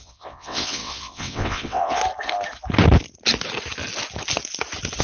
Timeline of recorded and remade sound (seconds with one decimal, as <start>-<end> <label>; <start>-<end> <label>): 0.0-2.0 remade; 2.0-5.0 recorded